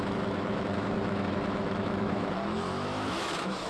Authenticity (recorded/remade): remade